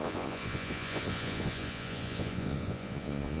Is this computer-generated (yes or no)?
yes